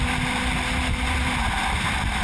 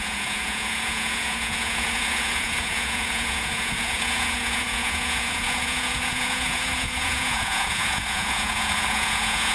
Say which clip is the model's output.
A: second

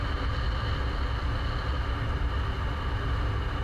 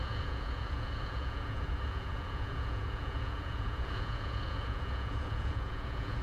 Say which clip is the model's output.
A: second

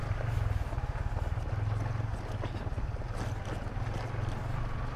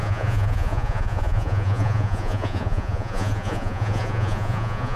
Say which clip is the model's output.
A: second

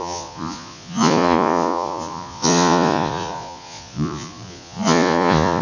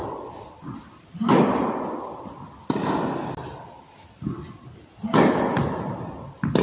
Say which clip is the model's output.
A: first